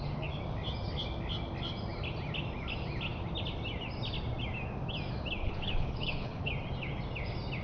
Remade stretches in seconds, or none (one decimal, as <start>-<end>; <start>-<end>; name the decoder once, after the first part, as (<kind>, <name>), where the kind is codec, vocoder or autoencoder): 5.4-6.5 (codec, HILCodec)